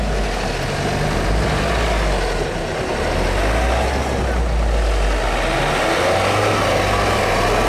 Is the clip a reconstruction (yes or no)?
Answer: no